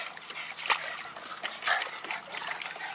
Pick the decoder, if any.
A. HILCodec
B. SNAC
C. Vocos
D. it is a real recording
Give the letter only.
D